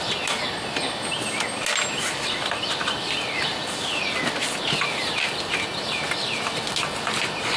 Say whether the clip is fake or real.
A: real